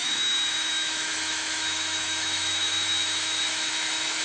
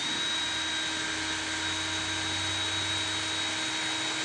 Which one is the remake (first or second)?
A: first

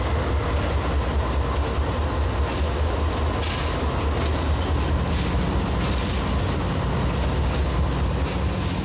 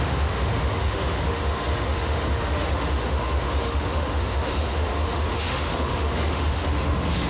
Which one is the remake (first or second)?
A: second